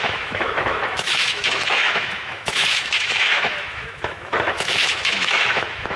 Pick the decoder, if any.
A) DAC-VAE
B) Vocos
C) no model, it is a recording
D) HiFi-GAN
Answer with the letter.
A